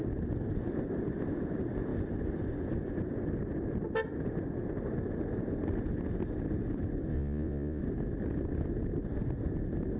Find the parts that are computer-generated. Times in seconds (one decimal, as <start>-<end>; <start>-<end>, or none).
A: 7.1-7.8